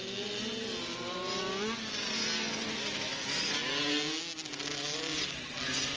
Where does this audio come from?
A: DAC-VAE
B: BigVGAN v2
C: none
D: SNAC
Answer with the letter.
C